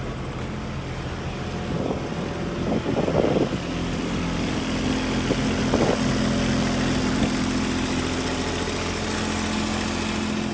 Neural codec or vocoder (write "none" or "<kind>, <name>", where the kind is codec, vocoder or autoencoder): none